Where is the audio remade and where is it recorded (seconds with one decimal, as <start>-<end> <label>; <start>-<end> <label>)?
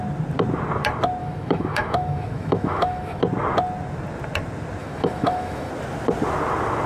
0.0-1.2 recorded; 1.2-3.2 remade; 3.2-4.8 recorded; 4.8-5.7 remade; 5.7-6.9 recorded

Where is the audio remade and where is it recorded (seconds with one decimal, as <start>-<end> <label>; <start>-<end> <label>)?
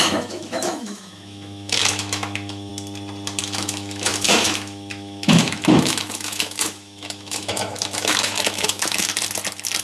0.0-2.7 remade; 2.7-3.4 recorded; 3.4-9.1 remade; 9.1-9.8 recorded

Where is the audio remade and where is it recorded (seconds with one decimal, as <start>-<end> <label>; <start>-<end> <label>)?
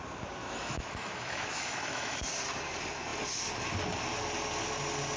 0.0-0.4 recorded; 0.4-2.2 remade; 2.2-5.2 recorded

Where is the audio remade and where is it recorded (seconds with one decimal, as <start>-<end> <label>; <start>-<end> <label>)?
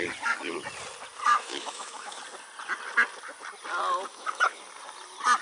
0.0-1.3 recorded; 1.3-2.2 remade; 2.2-4.1 recorded; 4.1-4.6 remade; 4.6-5.4 recorded